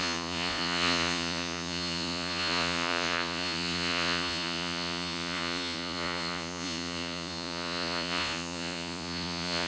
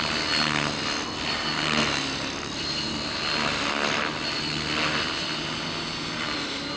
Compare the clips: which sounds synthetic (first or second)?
first